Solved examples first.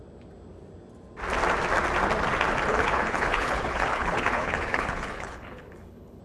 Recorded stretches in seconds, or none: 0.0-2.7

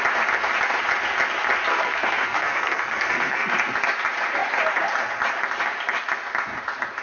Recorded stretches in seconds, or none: 0.0-1.7; 3.5-7.0

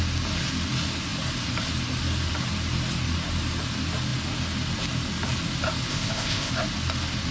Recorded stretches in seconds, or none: 0.0-5.9; 6.5-7.3

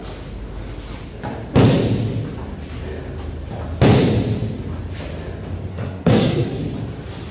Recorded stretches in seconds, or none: 0.0-5.7; 6.6-7.3

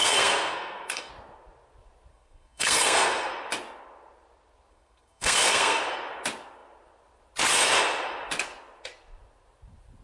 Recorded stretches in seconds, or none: 1.1-2.1; 3.3-4.7; 5.8-10.0

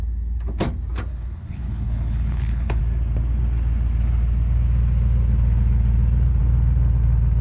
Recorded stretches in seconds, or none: 0.0-1.1; 2.8-7.4